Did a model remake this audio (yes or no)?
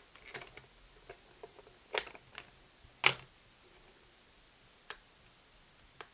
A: no